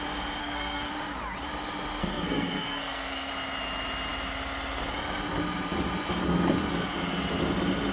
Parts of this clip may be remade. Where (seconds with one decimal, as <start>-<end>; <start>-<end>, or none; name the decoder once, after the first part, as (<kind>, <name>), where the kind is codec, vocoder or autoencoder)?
0.4-0.9 (codec, SNAC); 2.0-3.3